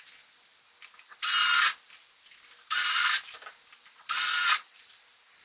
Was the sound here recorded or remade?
recorded